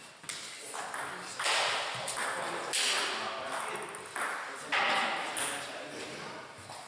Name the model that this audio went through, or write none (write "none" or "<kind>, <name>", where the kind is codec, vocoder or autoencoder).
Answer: none